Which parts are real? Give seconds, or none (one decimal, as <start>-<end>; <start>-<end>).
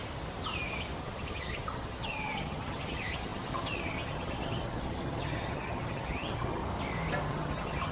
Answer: 0.0-1.0; 6.6-7.3